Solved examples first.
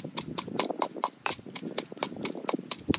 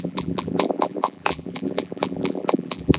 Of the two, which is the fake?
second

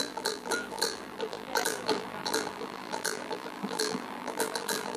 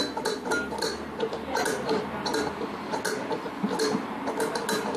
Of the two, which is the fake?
first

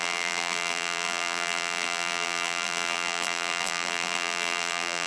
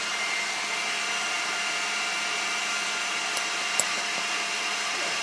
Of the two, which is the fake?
first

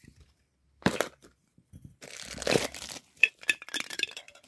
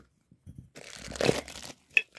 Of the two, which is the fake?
first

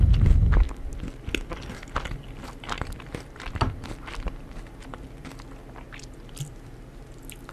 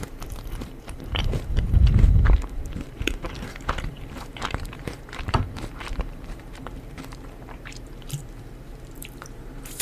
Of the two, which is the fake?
second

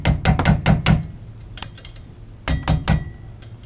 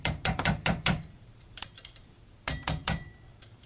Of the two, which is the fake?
second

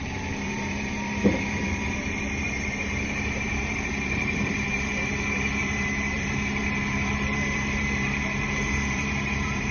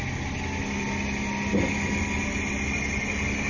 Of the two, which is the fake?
first